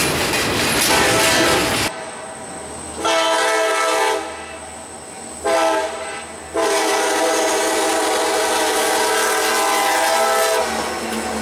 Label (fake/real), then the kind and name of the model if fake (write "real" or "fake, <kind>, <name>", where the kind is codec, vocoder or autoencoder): real